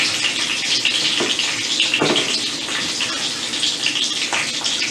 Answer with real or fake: real